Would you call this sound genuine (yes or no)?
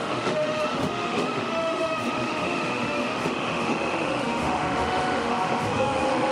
no